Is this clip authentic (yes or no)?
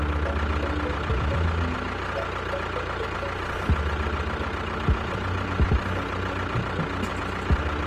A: yes